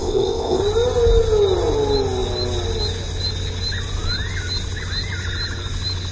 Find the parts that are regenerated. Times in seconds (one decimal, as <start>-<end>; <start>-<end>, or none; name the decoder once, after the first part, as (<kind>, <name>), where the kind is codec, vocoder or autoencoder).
0.0-0.6 (codec, ZipCodec)